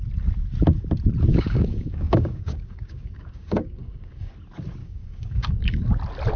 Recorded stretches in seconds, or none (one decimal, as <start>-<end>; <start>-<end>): 0.0-1.3; 4.3-4.8; 5.9-6.4